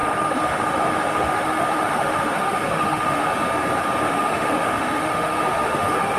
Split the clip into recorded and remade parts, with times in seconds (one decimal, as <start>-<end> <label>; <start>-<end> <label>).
0.0-3.3 remade; 3.3-4.1 recorded; 4.1-6.2 remade